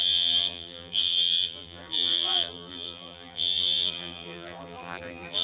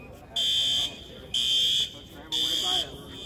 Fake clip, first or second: first